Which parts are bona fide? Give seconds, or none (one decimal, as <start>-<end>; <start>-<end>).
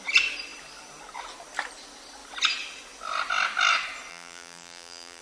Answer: 0.0-4.1